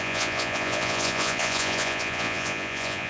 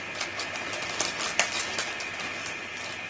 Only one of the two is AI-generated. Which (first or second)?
first